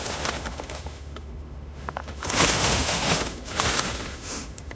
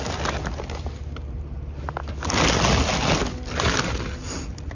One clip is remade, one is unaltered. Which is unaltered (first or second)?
second